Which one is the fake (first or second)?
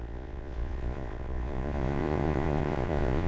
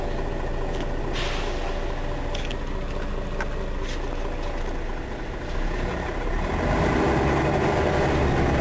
first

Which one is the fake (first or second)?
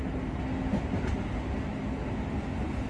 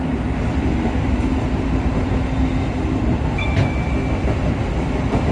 second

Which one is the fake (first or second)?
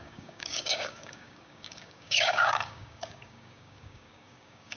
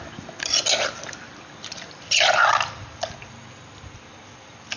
first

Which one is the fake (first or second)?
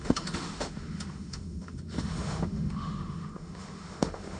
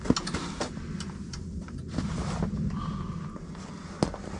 first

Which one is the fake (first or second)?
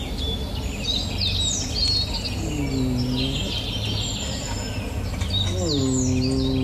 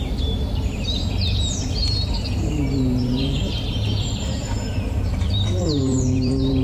second